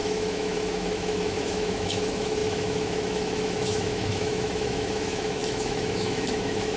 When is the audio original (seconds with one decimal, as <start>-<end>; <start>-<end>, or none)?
none